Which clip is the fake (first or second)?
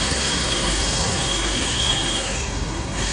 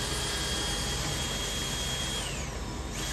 first